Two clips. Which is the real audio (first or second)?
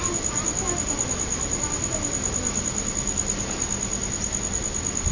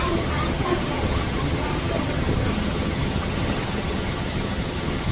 first